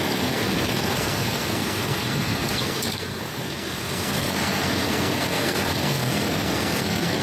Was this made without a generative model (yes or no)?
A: no